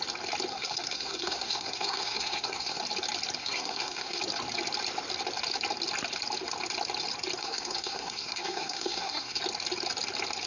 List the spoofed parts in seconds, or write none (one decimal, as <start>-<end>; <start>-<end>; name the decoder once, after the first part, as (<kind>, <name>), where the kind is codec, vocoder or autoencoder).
0.5-2.8 (codec, SNAC); 3.4-4.2; 7.4-9.4

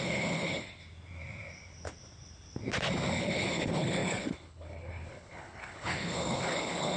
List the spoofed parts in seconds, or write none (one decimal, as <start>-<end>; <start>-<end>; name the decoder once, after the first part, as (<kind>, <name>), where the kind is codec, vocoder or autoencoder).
0.0-0.8 (codec, HILCodec); 3.2-7.0

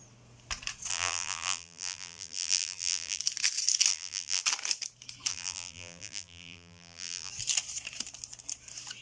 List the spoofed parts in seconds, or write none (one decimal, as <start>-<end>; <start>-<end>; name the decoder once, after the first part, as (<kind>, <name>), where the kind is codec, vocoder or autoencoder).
0.9-3.2 (vocoder, BigVGAN v2); 3.9-4.4; 5.3-7.3

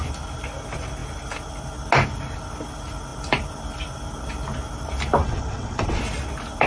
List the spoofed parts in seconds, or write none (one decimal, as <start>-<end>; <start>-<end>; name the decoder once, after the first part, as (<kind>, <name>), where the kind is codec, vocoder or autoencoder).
5.2-6.0 (vocoder, WaveNeXt)

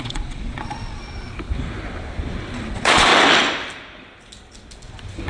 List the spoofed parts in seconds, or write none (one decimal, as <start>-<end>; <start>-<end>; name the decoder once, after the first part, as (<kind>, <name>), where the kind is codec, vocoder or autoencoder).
0.0-1.0 (vocoder, Vocos); 2.7-3.1